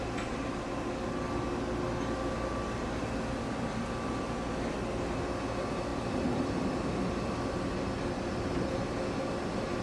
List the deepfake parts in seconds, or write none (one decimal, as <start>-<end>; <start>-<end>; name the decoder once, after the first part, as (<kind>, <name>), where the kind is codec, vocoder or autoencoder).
none